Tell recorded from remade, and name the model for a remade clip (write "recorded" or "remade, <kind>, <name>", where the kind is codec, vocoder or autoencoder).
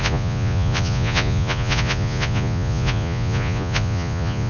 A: remade, vocoder, Vocos